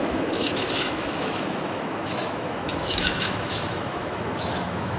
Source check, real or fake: fake